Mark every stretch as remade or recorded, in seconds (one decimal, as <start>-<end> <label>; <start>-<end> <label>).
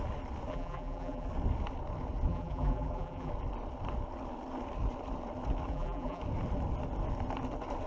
0.0-0.5 recorded; 0.5-1.3 remade; 1.3-2.3 recorded; 2.3-3.3 remade; 3.3-5.7 recorded; 5.7-6.2 remade; 6.2-7.9 recorded